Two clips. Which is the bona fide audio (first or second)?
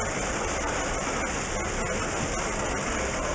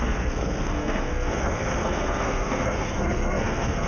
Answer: first